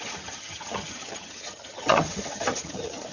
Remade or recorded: remade